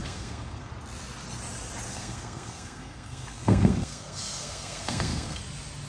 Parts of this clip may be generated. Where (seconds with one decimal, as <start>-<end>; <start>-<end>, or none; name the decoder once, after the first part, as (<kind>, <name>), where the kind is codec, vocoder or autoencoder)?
0.0-0.7 (codec, SNAC); 1.9-5.4